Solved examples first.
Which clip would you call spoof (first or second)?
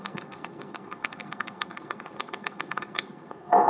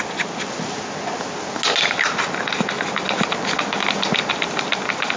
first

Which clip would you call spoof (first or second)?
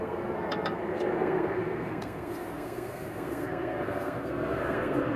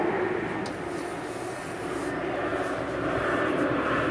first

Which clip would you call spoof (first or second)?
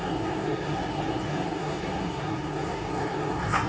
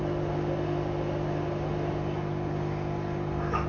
first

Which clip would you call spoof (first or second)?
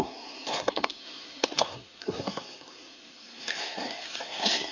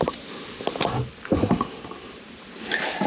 first